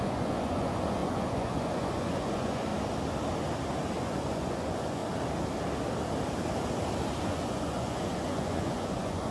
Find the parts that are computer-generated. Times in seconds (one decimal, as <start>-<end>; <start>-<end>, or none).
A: 0.0-2.7; 4.0-5.0; 7.2-9.3